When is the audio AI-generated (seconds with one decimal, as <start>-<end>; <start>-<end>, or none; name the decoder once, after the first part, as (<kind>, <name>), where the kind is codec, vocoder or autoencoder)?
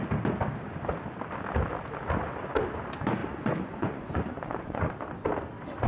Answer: 3.2-4.9 (vocoder, Vocos)